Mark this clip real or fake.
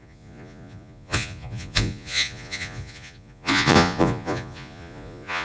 fake